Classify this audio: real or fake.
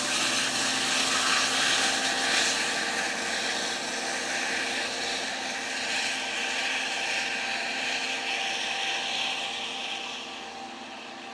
real